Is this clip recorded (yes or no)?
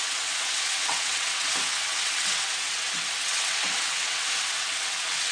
no